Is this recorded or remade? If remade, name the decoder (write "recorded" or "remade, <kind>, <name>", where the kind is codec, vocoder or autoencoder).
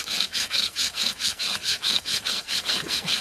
remade, codec, SNAC